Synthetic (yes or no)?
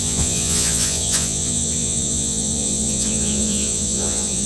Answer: yes